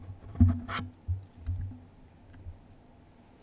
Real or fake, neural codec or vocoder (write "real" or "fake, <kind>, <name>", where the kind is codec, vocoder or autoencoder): real